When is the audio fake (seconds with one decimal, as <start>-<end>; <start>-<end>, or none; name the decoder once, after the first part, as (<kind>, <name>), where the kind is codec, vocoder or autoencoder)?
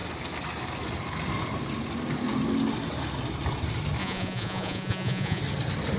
4.0-5.4 (vocoder, Vocos)